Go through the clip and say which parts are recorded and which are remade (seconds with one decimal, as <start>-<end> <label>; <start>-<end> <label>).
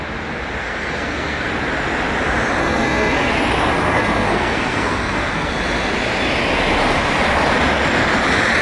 0.0-0.6 recorded; 0.6-1.5 remade; 1.5-2.6 recorded; 2.6-3.3 remade; 3.3-3.7 recorded; 3.7-5.5 remade; 5.5-8.6 recorded